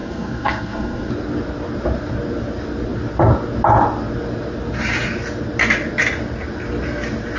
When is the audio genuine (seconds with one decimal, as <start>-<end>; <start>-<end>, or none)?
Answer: 1.1-7.4